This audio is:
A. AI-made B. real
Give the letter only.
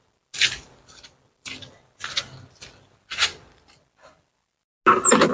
B